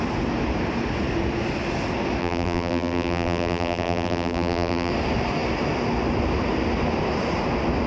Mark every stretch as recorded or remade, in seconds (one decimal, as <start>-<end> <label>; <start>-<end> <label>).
0.0-2.2 recorded; 2.2-4.9 remade; 4.9-7.9 recorded